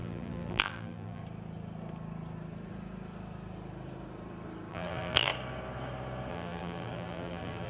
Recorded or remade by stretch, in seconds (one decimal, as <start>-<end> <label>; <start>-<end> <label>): 0.0-1.2 remade; 1.2-4.7 recorded; 4.7-5.3 remade; 5.3-6.3 recorded; 6.3-7.7 remade